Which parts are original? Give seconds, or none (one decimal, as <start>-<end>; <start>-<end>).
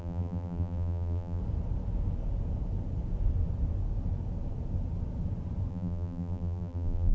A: 1.4-5.7